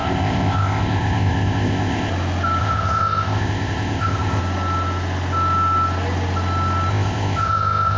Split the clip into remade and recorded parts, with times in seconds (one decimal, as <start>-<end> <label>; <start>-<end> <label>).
0.0-2.1 remade; 2.1-2.6 recorded; 2.6-4.4 remade; 4.4-6.9 recorded; 6.9-8.0 remade